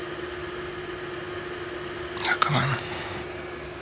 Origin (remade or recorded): recorded